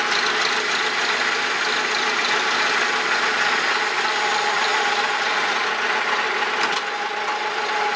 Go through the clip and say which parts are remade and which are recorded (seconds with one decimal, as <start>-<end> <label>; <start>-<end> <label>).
0.0-8.0 recorded